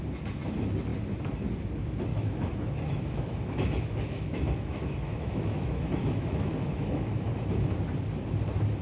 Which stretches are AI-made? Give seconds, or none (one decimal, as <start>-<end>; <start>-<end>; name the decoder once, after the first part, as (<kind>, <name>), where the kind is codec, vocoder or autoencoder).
2.1-7.3 (autoencoder, DAC-VAE)